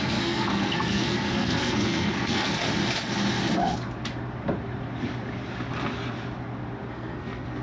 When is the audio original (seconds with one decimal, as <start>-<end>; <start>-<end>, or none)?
2.6-6.9